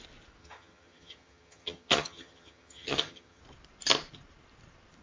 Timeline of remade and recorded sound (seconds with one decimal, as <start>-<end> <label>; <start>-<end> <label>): 0.0-0.4 recorded; 0.4-3.4 remade; 3.4-5.0 recorded